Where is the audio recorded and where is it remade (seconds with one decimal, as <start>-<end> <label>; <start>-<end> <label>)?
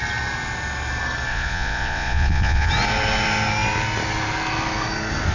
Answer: 0.0-1.3 recorded; 1.3-2.7 remade; 2.7-5.3 recorded